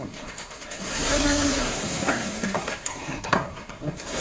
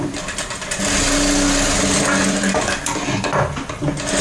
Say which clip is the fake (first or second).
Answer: first